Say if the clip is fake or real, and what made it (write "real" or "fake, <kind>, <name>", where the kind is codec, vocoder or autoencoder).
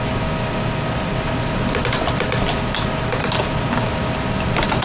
real